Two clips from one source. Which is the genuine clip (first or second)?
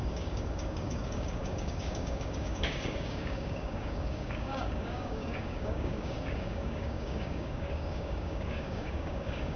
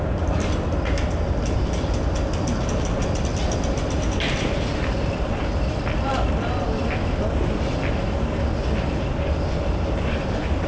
second